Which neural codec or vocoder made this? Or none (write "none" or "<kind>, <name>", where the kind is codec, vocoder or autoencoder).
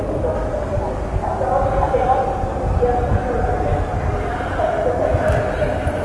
none